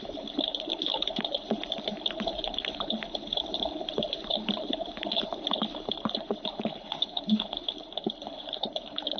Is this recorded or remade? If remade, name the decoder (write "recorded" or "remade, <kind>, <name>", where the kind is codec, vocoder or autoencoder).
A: remade, codec, HILCodec